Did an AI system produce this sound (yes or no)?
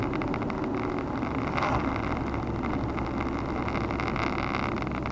no